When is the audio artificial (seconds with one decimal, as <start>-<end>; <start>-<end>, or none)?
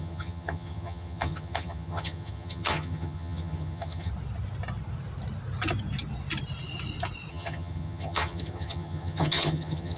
0.0-4.1; 7.3-10.0